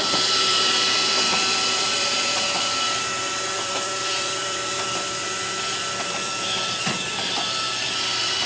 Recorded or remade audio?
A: remade